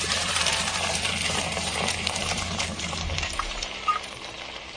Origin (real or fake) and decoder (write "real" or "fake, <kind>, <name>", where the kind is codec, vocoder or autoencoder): fake, vocoder, BigVGAN v2